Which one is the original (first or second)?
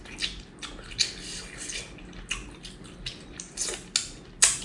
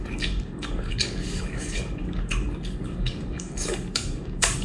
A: first